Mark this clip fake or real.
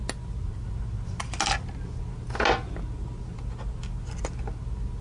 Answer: real